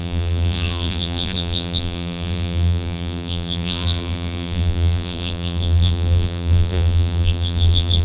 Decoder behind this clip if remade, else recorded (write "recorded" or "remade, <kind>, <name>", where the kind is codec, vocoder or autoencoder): remade, vocoder, BigVGAN v2